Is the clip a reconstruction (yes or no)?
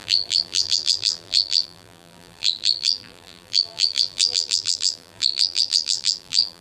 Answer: yes